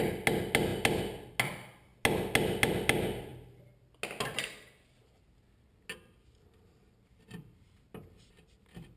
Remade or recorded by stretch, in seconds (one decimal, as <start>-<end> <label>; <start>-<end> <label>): 0.0-9.0 recorded